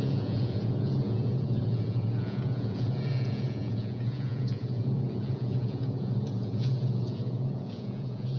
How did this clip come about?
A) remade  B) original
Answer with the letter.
A